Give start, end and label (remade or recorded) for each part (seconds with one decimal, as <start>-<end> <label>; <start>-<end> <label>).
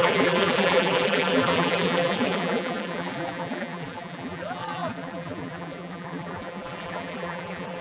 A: 0.0-7.8 remade